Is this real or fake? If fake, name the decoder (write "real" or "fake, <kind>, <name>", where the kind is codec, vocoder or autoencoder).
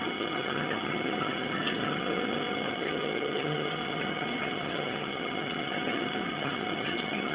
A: fake, vocoder, HiFi-GAN